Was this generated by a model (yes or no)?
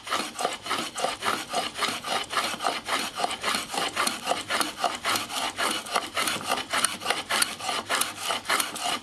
no